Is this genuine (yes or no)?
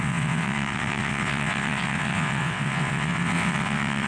no